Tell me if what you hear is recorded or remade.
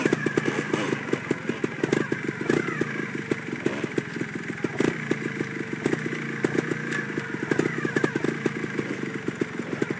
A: recorded